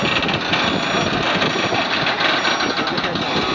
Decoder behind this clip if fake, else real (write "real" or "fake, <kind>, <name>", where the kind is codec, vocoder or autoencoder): real